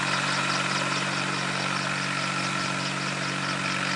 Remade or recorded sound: recorded